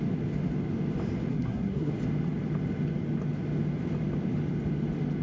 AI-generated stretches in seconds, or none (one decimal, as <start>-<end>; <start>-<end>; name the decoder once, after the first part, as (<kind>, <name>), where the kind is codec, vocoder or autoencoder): 1.3-1.9 (codec, SNAC)